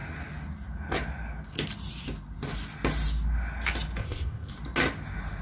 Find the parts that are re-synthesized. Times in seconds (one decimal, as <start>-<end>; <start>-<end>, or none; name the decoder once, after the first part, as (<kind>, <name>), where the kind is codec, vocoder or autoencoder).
4.0-4.5 (codec, ZipCodec)